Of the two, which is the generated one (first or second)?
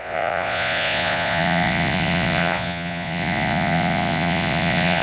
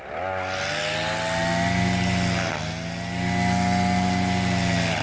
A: first